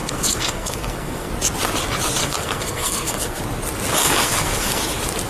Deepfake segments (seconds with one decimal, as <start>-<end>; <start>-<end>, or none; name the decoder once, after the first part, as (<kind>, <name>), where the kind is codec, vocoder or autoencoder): 0.0-1.3 (codec, SNAC); 2.2-3.4; 4.0-4.8